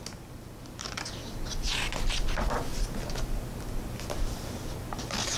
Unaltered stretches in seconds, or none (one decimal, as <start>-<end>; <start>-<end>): 0.0-5.4